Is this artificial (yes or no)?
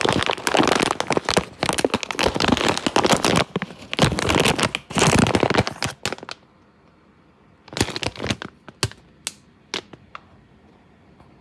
no